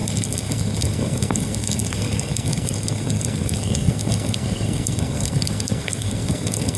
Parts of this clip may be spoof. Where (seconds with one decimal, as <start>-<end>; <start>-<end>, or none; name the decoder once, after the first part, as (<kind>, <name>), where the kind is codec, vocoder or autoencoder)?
0.0-6.8 (codec, SNAC)